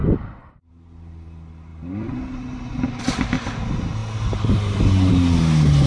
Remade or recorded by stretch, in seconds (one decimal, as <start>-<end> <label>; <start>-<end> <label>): 0.0-5.9 recorded